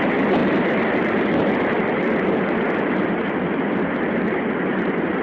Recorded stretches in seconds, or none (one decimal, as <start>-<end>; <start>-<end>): 0.0-5.2